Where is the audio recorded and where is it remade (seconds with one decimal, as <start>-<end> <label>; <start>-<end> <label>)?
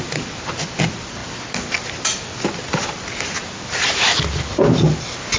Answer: 0.0-5.4 recorded